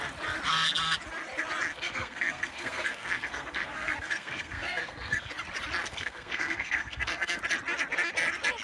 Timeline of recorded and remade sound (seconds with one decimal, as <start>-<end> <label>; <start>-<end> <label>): 0.0-1.7 recorded; 1.7-5.3 remade; 5.3-5.8 recorded; 5.8-7.4 remade; 7.4-8.6 recorded